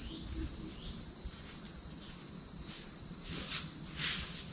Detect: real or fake real